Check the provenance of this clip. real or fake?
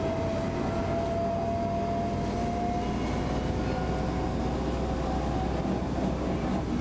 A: real